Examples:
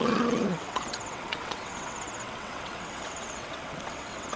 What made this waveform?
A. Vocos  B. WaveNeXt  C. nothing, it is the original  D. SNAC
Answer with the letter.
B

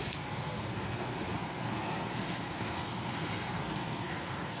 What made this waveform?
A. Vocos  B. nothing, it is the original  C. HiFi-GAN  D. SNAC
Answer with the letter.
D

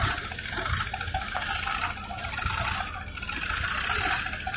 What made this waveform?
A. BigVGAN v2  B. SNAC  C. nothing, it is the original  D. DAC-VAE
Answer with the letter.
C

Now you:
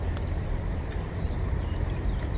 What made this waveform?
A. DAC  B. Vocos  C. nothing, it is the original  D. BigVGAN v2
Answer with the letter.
D